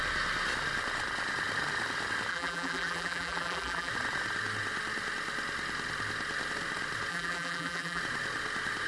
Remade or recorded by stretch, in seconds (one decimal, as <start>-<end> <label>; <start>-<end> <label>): 0.0-2.3 recorded; 2.3-3.9 remade; 3.9-7.1 recorded; 7.1-8.0 remade; 8.0-8.9 recorded